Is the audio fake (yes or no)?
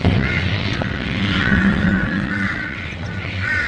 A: yes